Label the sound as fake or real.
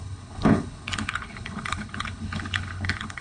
fake